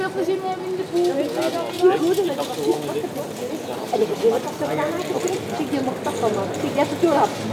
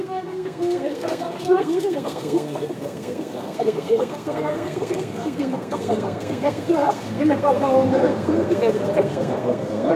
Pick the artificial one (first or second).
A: second